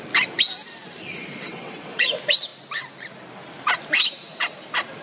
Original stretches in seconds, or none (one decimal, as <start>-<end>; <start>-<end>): 0.0-1.5; 2.1-5.0